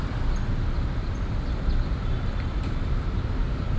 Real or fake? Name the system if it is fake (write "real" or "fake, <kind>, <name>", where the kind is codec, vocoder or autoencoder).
real